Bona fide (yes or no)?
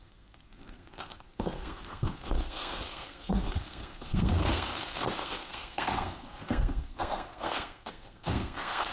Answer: no